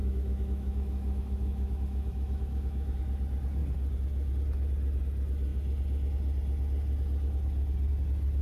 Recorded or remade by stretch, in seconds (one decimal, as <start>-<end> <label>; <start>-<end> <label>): 0.0-3.0 remade; 3.0-8.4 recorded

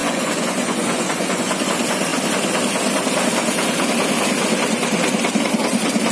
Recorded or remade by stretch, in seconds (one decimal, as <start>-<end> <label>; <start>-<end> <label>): 0.0-1.7 remade; 1.7-6.1 recorded

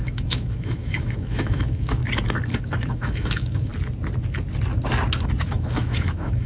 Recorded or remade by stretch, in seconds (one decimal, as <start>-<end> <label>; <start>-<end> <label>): 0.0-2.0 remade; 2.0-2.6 recorded; 2.6-3.7 remade; 3.7-5.4 recorded; 5.4-6.5 remade

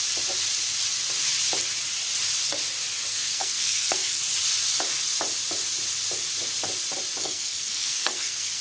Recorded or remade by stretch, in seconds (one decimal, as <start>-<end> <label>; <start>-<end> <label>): 0.0-3.1 recorded; 3.1-4.2 remade; 4.2-7.2 recorded; 7.2-8.6 remade

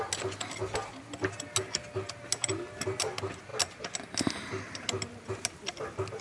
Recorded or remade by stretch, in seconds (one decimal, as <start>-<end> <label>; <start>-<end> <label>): 0.0-6.2 recorded

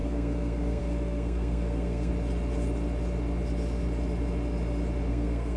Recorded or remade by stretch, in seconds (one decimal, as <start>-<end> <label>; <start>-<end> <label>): 0.0-2.1 remade; 2.1-5.1 recorded; 5.1-5.6 remade